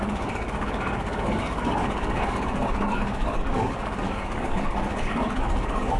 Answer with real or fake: fake